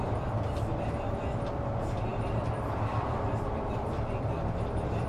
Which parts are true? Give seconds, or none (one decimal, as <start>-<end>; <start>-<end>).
0.0-5.1